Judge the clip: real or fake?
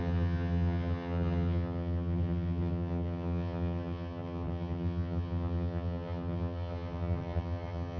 fake